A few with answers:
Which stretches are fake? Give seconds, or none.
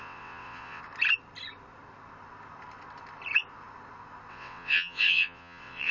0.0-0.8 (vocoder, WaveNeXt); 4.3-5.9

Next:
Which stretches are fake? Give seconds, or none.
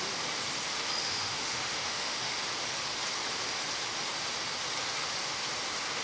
1.0-2.4 (autoencoder, DAC-VAE)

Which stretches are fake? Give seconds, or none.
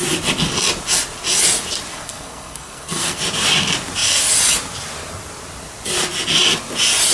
1.9-3.2 (codec, SNAC)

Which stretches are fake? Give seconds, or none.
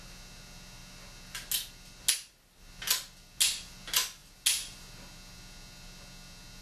none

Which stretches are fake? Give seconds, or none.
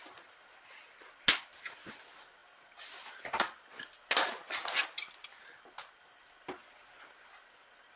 none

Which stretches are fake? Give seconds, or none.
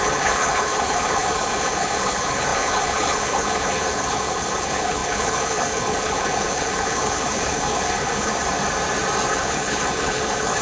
0.0-8.3 (codec, HILCodec); 9.3-10.6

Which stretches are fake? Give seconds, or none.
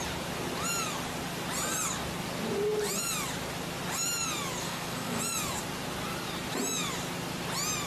4.6-5.2 (codec, SNAC)